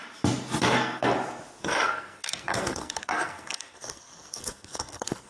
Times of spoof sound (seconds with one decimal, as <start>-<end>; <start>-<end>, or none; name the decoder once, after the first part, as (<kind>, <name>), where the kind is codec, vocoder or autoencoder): 0.6-1.1 (codec, SNAC); 1.6-5.3